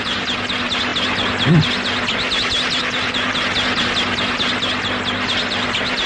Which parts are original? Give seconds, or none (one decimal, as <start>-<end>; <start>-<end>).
0.0-6.1